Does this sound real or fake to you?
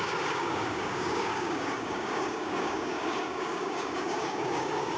fake